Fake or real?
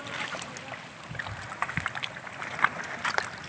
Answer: real